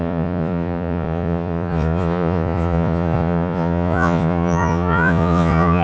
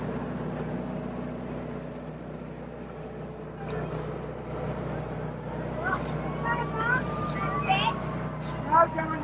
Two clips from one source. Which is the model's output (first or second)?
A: first